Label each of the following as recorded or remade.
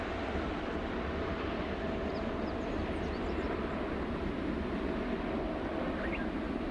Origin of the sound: recorded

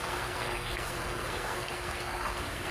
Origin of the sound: remade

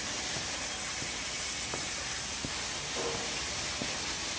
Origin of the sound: recorded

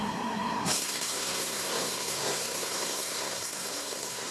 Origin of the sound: remade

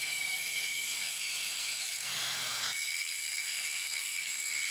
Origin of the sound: remade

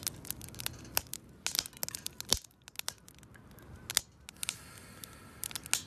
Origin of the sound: recorded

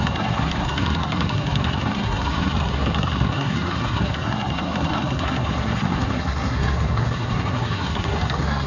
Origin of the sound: remade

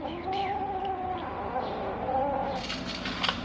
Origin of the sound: recorded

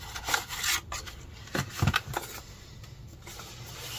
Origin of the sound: recorded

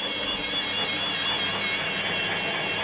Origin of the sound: recorded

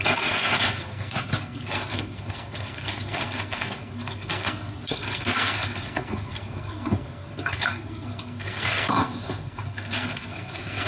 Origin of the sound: remade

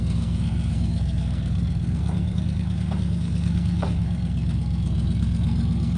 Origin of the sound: remade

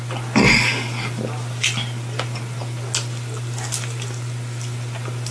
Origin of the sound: recorded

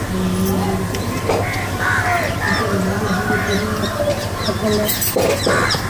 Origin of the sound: recorded